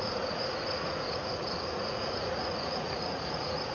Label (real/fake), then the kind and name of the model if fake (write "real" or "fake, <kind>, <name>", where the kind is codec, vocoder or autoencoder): fake, vocoder, Vocos